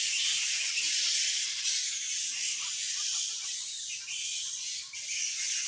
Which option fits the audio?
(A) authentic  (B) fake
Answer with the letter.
A